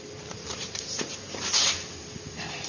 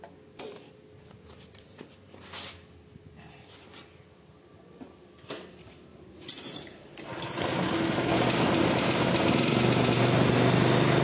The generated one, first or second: first